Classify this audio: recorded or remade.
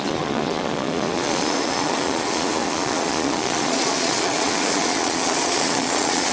remade